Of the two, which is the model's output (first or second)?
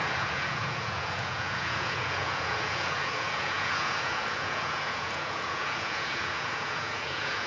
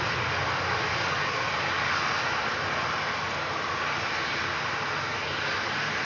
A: first